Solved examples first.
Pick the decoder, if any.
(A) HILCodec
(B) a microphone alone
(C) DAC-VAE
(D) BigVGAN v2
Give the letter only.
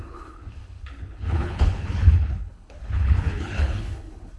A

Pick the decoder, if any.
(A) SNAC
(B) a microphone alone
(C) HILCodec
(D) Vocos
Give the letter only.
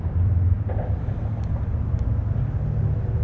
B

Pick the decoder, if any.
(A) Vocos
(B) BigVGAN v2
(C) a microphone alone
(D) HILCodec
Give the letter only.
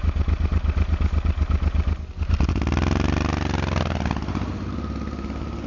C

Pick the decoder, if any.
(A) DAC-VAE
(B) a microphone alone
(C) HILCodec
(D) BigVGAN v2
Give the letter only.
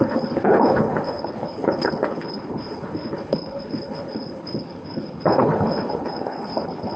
C